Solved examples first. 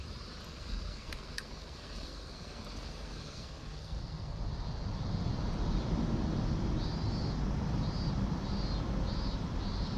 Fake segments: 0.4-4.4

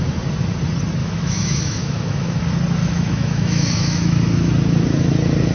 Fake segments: 1.0-2.4; 2.8-4.5